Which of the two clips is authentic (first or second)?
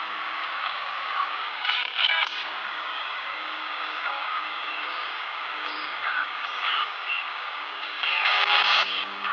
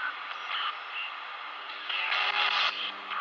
second